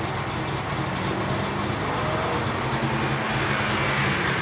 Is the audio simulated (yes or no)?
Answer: no